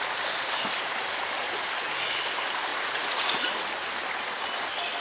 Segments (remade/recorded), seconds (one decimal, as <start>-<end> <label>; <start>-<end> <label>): 0.0-2.7 recorded; 2.7-3.5 remade; 3.5-5.0 recorded